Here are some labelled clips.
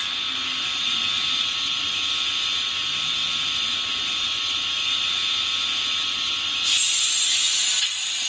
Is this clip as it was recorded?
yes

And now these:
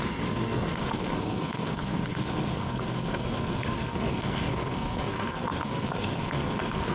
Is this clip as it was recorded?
no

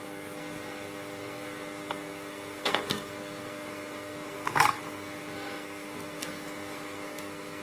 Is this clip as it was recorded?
no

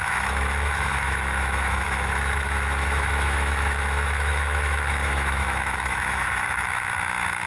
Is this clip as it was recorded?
no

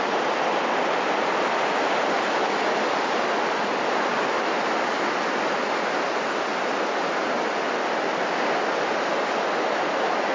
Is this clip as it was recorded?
yes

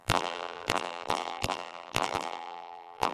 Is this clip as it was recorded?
no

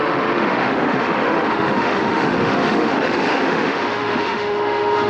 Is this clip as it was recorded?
no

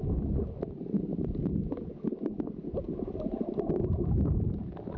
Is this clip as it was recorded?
yes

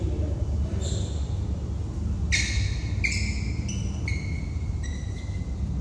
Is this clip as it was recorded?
yes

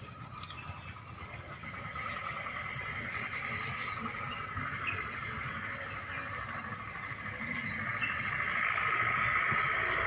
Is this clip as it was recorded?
yes